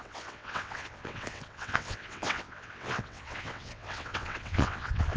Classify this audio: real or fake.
fake